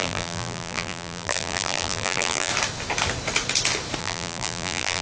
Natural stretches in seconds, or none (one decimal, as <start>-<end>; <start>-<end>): 2.5-4.0